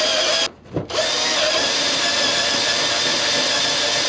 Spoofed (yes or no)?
no